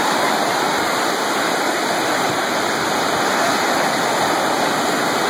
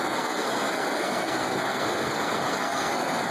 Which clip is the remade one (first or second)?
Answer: second